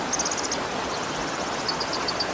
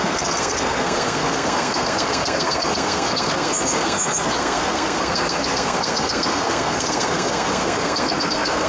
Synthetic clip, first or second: second